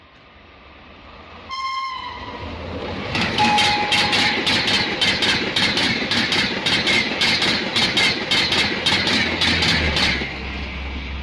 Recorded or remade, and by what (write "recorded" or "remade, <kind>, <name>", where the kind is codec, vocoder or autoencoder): recorded